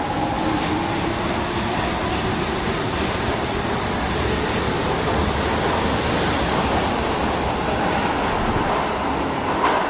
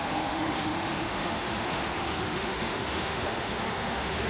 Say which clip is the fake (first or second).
second